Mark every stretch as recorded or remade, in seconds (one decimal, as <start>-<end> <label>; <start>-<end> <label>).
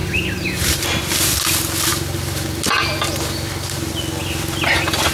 0.0-1.0 remade; 1.0-1.9 recorded; 1.9-3.9 remade; 3.9-5.1 recorded